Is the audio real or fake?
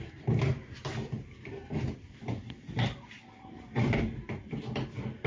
fake